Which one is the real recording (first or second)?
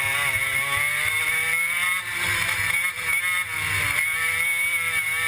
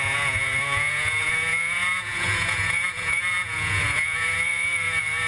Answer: first